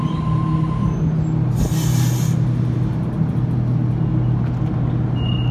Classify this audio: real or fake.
real